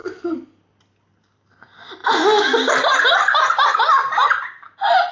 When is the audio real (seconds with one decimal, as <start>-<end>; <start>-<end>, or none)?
0.6-5.1